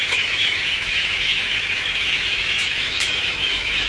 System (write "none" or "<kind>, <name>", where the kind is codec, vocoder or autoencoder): autoencoder, DAC-VAE